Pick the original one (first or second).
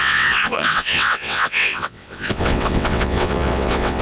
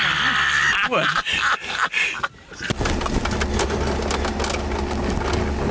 second